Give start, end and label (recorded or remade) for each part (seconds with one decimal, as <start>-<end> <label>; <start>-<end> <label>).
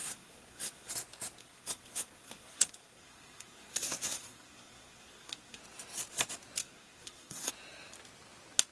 0.0-0.9 remade; 0.9-1.4 recorded; 1.4-5.6 remade; 5.6-6.6 recorded; 6.6-7.5 remade; 7.5-8.7 recorded